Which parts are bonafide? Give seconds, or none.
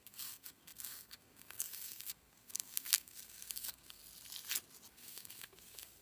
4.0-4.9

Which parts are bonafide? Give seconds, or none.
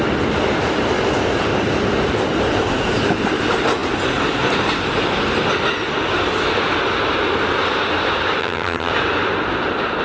0.0-8.4; 8.9-10.0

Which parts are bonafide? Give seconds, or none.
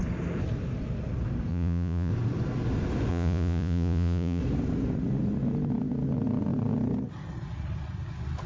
0.0-1.5; 2.1-3.1; 4.4-8.5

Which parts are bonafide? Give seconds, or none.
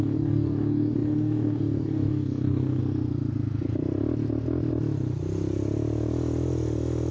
2.8-7.1